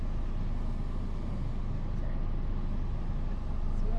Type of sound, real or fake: real